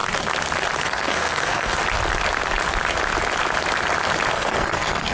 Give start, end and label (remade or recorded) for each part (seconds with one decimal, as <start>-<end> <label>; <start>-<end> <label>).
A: 0.0-0.8 recorded; 0.8-1.8 remade; 1.8-4.3 recorded; 4.3-5.1 remade